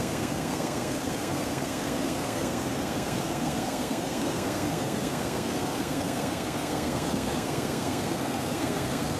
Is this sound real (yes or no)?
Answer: no